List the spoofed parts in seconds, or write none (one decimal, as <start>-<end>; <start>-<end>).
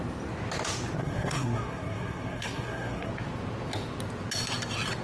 1.0-3.1